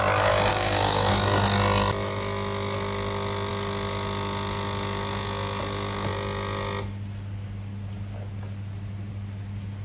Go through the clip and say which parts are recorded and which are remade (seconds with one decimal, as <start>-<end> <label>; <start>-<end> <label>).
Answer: 0.0-0.5 recorded; 0.5-1.1 remade; 1.1-9.8 recorded